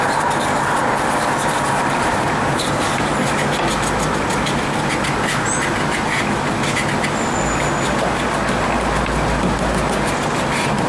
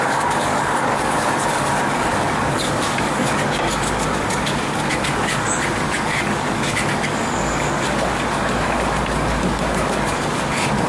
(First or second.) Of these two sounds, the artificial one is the second